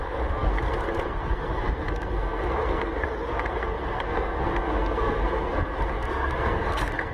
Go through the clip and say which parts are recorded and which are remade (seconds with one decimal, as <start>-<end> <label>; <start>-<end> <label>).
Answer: 0.0-7.1 remade